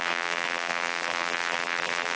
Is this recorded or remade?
remade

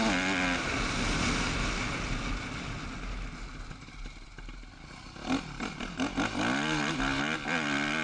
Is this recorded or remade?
recorded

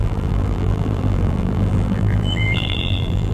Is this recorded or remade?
remade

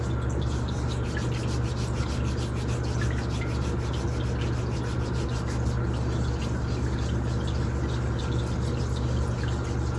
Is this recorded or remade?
recorded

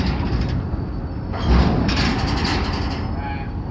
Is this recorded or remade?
recorded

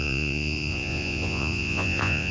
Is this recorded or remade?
remade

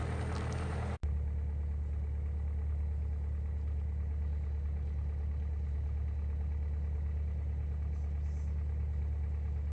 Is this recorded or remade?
recorded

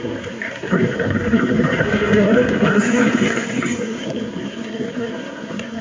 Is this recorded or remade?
remade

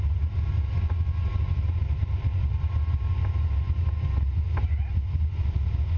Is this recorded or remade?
recorded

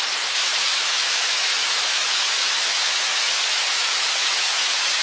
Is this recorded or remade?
remade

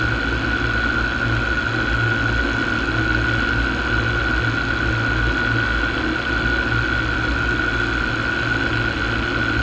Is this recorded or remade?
recorded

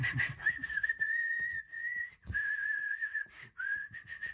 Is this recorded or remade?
remade